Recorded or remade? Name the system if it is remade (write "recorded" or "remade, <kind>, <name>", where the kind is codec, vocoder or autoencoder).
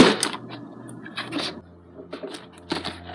recorded